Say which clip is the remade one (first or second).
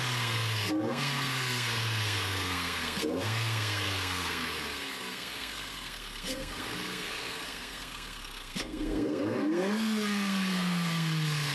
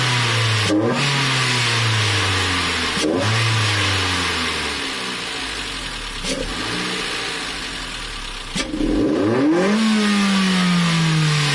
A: first